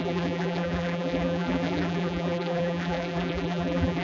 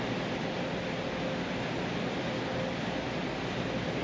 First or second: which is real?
second